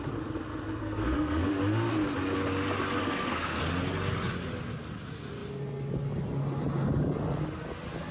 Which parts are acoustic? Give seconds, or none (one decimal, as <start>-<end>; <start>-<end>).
0.0-0.8; 1.5-3.0; 3.6-8.1